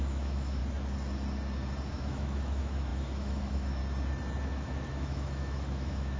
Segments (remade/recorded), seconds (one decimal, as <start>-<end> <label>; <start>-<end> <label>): 0.0-0.6 remade; 0.6-1.9 recorded; 1.9-3.8 remade; 3.8-4.4 recorded; 4.4-6.2 remade